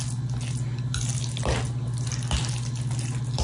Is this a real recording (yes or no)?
yes